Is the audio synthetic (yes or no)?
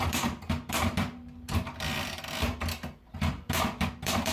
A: yes